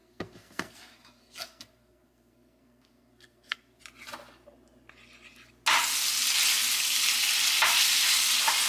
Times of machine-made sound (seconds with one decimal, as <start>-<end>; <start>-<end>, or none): 0.0-3.8